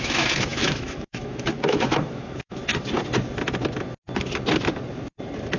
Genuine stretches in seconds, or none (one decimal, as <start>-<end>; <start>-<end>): 2.6-5.6